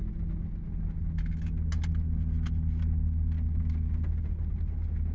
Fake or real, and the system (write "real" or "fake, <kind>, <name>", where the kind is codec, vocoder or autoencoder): real